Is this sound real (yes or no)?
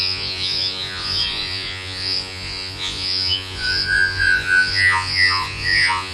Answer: no